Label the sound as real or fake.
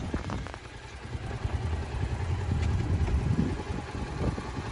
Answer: fake